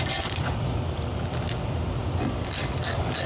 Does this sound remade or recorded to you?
remade